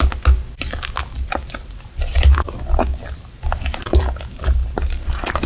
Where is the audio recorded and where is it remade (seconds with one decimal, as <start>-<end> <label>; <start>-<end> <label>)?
0.0-5.5 recorded